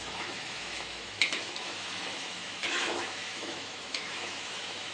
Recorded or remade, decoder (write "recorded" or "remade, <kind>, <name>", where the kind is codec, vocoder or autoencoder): remade, autoencoder, DAC-VAE